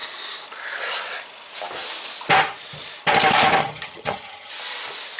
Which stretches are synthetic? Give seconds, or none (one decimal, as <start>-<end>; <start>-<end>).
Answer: 3.6-4.5